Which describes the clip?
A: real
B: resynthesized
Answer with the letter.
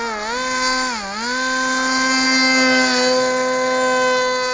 A